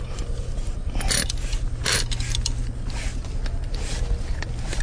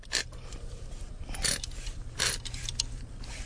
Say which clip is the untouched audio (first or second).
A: first